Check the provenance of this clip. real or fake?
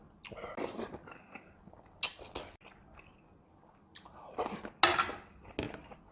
real